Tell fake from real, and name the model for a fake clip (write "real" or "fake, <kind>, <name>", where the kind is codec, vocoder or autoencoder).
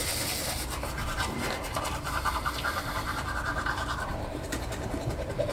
fake, vocoder, BigVGAN v2